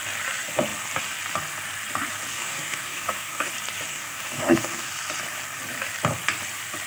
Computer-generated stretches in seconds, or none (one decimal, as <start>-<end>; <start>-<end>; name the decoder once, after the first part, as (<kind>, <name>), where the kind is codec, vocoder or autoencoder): 2.3-3.5 (codec, DAC); 3.9-4.9